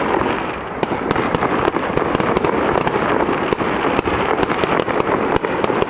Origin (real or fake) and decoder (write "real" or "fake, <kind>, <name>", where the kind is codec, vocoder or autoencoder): real